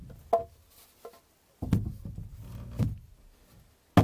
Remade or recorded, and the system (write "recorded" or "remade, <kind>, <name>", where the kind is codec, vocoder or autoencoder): recorded